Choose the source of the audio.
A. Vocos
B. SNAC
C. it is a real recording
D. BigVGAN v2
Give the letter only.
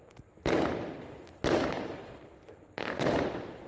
C